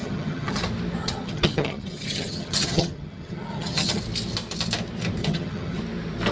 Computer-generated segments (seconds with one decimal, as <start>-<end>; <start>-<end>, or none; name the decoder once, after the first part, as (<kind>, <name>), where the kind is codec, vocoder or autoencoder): 0.0-0.6 (vocoder, HiFi-GAN); 1.0-4.0; 5.2-5.8